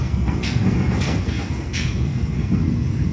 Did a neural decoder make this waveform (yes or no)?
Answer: yes